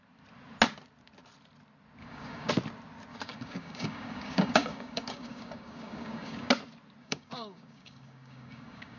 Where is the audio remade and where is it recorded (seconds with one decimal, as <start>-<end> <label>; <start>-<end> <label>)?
0.0-2.0 recorded; 2.0-2.5 remade; 2.5-3.1 recorded; 3.1-6.5 remade; 6.5-7.0 recorded; 7.0-9.0 remade